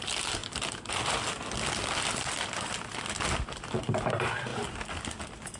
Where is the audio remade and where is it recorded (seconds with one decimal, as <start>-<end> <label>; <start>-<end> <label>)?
0.0-5.6 recorded